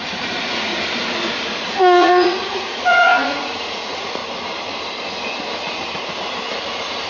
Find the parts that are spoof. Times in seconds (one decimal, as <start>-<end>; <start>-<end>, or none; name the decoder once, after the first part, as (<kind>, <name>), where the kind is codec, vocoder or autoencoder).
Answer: 0.0-0.7 (vocoder, Vocos); 1.6-4.2